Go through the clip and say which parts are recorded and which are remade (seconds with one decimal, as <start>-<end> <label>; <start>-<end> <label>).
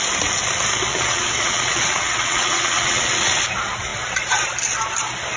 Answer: 0.0-0.9 recorded; 0.9-3.1 remade; 3.1-5.4 recorded